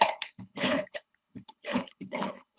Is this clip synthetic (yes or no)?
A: yes